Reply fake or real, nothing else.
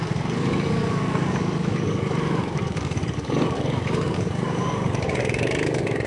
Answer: fake